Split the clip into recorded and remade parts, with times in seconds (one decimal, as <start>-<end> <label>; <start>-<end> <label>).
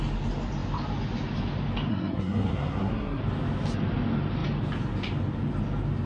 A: 0.0-1.9 recorded; 1.9-3.2 remade; 3.2-6.1 recorded